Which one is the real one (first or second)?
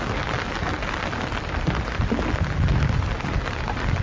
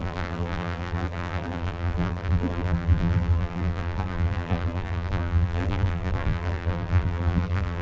first